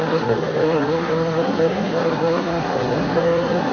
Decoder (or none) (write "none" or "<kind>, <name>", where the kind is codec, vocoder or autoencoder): codec, SNAC